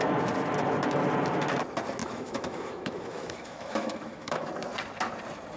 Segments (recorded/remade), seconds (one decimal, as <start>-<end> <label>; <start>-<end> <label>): 0.0-2.0 recorded; 2.0-4.5 remade; 4.5-5.6 recorded